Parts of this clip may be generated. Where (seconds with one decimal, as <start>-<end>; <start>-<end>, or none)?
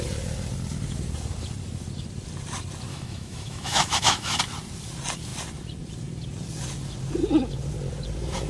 2.9-4.4